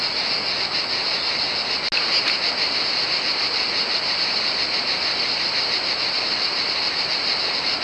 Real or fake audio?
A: real